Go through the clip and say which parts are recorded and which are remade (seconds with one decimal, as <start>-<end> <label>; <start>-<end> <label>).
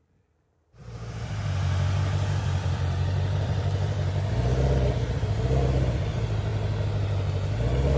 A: 0.0-6.5 remade; 6.5-8.0 recorded